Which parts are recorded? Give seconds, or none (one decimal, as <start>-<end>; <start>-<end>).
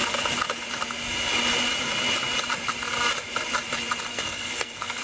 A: 0.0-4.1